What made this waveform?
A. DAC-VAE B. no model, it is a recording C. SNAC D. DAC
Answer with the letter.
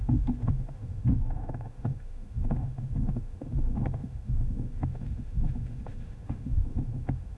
A